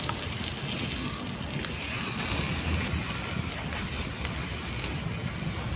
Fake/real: real